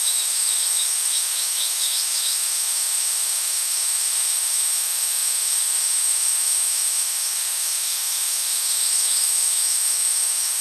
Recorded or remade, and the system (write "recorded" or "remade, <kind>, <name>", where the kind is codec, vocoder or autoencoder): remade, autoencoder, DAC-VAE